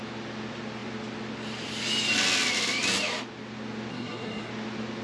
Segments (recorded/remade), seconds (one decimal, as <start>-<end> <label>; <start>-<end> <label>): 0.0-3.9 recorded; 3.9-4.5 remade; 4.5-5.0 recorded